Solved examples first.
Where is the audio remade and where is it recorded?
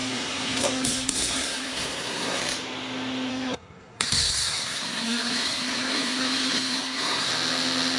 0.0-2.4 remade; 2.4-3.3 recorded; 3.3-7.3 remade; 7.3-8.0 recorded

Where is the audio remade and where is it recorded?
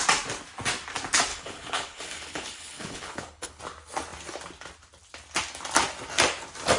0.0-1.3 recorded; 1.3-3.6 remade; 3.6-6.8 recorded